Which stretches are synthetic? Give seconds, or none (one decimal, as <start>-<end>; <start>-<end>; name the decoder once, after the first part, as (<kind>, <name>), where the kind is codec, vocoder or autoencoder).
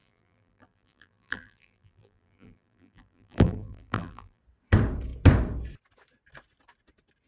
0.0-4.4 (vocoder, BigVGAN v2)